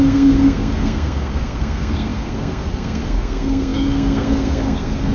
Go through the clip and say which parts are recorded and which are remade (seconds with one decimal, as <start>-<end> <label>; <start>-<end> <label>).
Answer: 0.0-5.1 remade